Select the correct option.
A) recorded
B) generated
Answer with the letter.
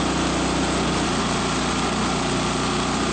A